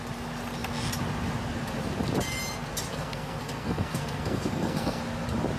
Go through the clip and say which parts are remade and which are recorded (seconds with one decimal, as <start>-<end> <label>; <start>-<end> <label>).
0.0-2.9 recorded; 2.9-5.0 remade; 5.0-5.6 recorded

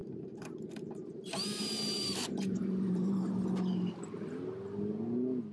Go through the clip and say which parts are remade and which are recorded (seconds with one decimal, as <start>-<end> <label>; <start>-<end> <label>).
0.0-3.3 remade; 3.3-5.5 recorded